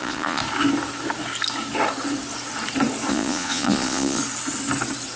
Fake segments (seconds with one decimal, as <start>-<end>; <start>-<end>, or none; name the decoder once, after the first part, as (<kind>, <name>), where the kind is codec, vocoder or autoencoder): 0.0-0.4 (vocoder, Vocos); 3.1-4.2